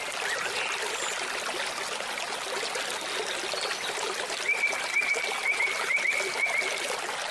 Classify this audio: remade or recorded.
recorded